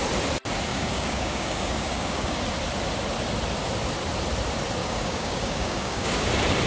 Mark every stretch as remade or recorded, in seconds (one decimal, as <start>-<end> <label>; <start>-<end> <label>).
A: 0.0-0.7 recorded; 0.7-2.4 remade; 2.4-4.8 recorded; 4.8-6.3 remade; 6.3-6.7 recorded

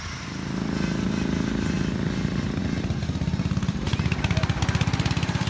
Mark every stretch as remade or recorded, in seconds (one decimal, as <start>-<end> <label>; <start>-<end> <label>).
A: 0.0-5.5 recorded

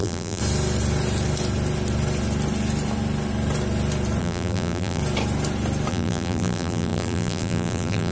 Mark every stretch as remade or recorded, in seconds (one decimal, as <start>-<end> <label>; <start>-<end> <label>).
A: 0.0-0.4 remade; 0.4-4.2 recorded; 4.2-5.0 remade; 5.0-5.9 recorded; 5.9-8.1 remade